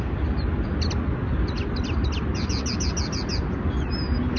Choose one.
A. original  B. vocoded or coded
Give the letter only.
A